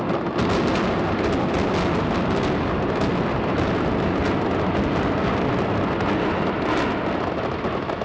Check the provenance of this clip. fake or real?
real